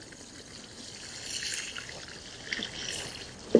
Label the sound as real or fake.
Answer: real